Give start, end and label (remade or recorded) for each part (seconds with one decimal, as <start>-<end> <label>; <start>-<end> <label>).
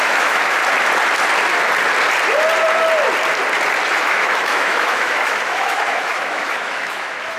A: 0.0-0.6 remade; 0.6-3.9 recorded; 3.9-7.4 remade